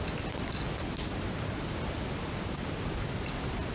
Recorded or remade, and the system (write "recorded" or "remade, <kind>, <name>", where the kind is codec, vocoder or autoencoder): recorded